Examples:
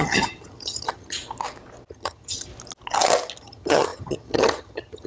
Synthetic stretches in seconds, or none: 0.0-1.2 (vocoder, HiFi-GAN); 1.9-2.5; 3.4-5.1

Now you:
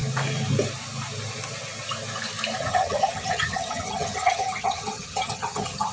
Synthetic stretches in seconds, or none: 2.6-5.9 (vocoder, HiFi-GAN)

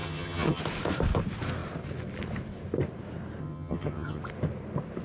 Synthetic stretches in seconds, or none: 0.0-0.6 (vocoder, HiFi-GAN); 3.4-4.2

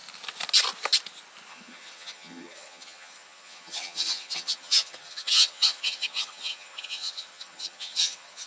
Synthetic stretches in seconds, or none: 1.5-8.5 (vocoder, HiFi-GAN)

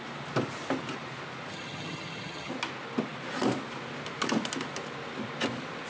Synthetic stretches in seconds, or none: 1.5-2.5 (vocoder, HiFi-GAN)

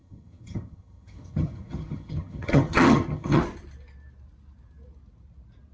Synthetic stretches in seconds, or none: 0.0-3.4 (vocoder, HiFi-GAN)

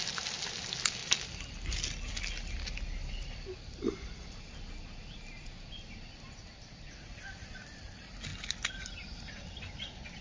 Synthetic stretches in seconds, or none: none

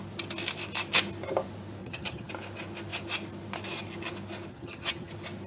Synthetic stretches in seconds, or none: 1.8-2.3 (vocoder, HiFi-GAN); 4.5-5.1